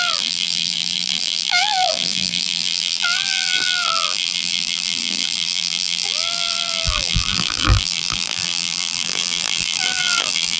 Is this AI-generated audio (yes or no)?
yes